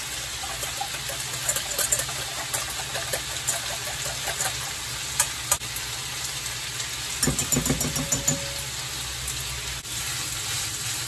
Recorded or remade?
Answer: recorded